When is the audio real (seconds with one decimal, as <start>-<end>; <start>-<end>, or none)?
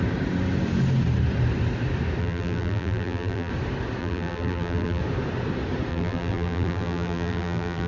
0.0-2.2; 3.5-4.0; 5.0-5.9